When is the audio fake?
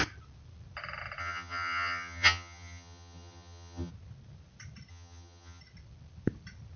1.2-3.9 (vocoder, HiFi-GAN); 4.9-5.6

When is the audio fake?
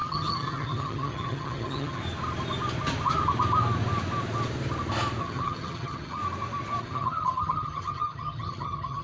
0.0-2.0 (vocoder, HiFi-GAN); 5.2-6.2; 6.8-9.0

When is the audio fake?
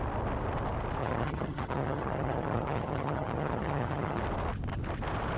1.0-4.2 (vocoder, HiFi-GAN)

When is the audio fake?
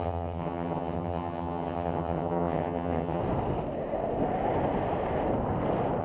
0.0-3.2 (vocoder, HiFi-GAN)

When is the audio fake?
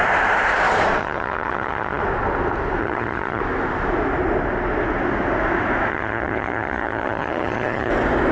1.0-2.0 (vocoder, HiFi-GAN); 2.8-3.4; 5.9-7.9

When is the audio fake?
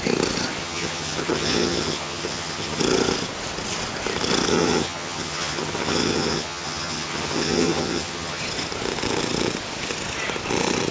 0.6-2.8 (vocoder, HiFi-GAN); 4.5-8.4